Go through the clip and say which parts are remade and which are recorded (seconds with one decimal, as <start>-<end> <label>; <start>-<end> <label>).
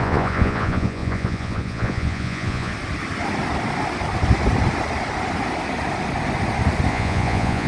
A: 0.0-2.7 remade; 2.7-6.9 recorded; 6.9-7.7 remade